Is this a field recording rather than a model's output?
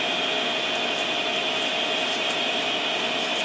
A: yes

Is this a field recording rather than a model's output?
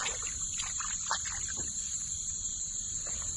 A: yes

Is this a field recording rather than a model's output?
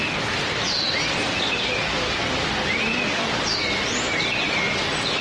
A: yes